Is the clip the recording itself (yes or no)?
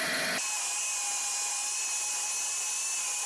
yes